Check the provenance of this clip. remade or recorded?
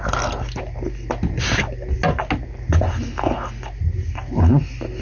recorded